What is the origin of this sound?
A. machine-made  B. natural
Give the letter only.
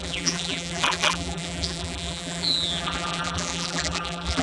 A